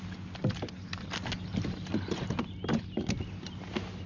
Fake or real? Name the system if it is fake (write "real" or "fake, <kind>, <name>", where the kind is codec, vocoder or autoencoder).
real